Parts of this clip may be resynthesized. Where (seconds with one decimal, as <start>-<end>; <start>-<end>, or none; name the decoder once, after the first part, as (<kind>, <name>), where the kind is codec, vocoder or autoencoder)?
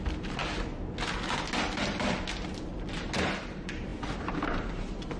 0.0-0.4 (vocoder, BigVGAN v2); 3.4-5.2